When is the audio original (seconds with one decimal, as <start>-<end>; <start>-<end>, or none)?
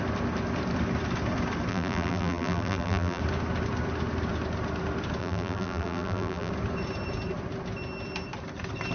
0.0-1.7; 3.2-5.2; 6.5-8.9